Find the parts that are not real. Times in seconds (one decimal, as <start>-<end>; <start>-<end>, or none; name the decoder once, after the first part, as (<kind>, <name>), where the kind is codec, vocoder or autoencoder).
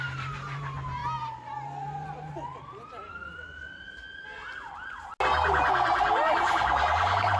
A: none